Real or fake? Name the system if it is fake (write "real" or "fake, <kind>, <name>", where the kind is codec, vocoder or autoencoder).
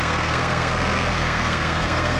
fake, codec, SNAC